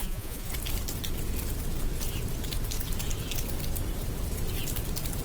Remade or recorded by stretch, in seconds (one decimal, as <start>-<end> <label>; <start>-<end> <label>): 0.0-0.5 remade; 0.5-5.2 recorded

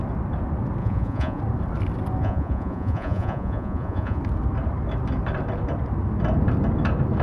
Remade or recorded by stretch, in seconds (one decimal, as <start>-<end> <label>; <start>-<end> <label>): 0.0-0.8 recorded; 0.8-1.4 remade; 1.4-2.2 recorded; 2.2-4.2 remade; 4.2-7.2 recorded

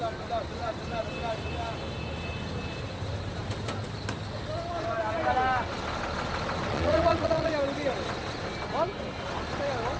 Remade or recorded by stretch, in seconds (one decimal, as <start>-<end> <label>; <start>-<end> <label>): 0.0-6.7 recorded; 6.7-7.5 remade; 7.5-10.0 recorded